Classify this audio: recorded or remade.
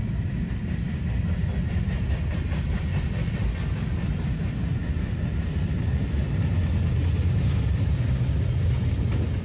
recorded